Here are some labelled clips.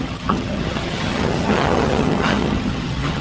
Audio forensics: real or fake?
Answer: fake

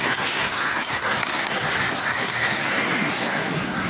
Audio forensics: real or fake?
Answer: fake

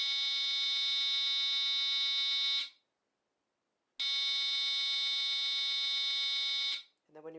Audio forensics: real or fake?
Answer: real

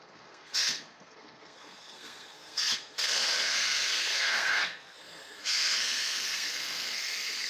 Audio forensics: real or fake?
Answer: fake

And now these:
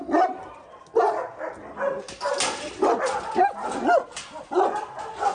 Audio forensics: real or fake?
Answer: real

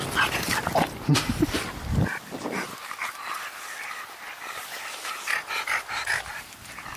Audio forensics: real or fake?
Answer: real